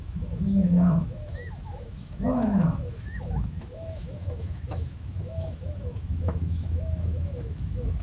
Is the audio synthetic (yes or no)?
yes